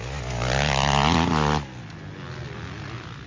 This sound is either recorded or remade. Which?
recorded